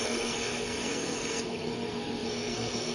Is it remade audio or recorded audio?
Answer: remade